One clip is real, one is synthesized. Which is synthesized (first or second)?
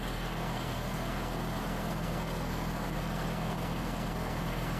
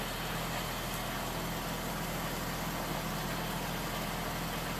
first